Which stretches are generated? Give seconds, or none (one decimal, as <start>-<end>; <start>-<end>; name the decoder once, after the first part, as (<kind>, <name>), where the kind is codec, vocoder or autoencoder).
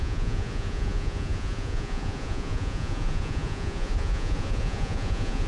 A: 0.0-5.5 (vocoder, Vocos)